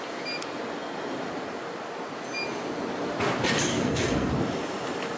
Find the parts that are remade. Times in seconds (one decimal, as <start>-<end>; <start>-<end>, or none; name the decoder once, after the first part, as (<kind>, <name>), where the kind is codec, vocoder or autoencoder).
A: 3.7-4.3 (codec, SNAC)